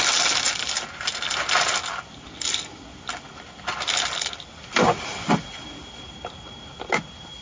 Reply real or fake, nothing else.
real